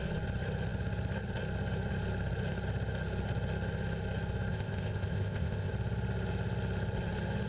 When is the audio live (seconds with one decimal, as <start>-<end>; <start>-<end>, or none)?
0.0-4.5; 5.7-7.5